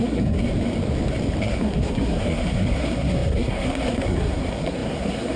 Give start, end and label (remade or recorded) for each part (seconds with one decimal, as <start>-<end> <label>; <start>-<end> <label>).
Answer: 0.0-0.4 remade; 0.4-1.4 recorded; 1.4-5.4 remade